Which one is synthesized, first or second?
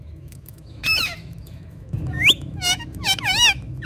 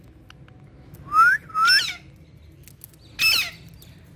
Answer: first